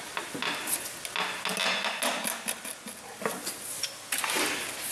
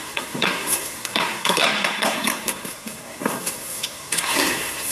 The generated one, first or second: second